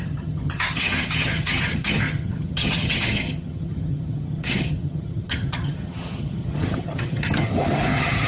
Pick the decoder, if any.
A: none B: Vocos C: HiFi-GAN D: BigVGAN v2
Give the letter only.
C